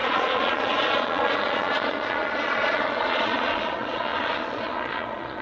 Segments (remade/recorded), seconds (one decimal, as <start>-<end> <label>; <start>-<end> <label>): 0.0-5.4 remade